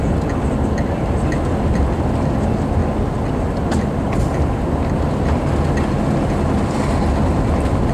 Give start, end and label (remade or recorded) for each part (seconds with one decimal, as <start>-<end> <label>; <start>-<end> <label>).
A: 0.0-7.9 recorded